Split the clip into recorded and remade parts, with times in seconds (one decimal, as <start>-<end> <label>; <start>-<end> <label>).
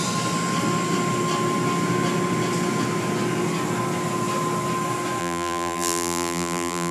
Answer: 0.0-5.2 recorded; 5.2-6.9 remade